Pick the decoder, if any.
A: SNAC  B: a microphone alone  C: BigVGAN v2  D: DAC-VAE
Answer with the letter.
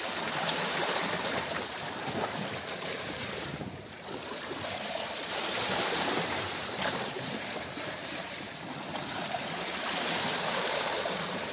C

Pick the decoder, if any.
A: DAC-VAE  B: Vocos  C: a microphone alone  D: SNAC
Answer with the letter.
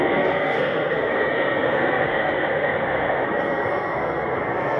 D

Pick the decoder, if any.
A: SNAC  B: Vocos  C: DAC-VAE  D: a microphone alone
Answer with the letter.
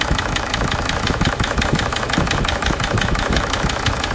C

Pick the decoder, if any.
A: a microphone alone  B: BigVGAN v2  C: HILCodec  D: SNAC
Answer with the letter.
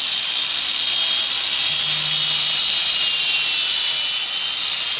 A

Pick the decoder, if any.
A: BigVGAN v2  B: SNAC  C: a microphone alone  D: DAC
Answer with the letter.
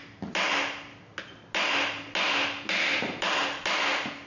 C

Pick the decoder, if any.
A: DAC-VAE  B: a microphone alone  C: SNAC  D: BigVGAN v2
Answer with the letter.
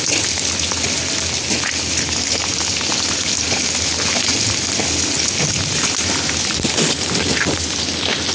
B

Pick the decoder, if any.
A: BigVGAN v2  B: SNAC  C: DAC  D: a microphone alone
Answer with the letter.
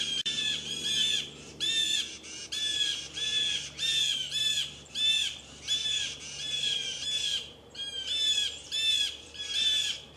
A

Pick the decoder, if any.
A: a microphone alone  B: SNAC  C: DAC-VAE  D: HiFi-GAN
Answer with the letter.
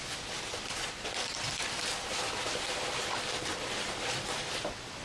A